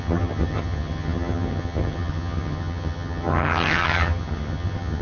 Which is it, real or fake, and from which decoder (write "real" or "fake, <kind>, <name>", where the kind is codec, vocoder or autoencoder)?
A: fake, vocoder, HiFi-GAN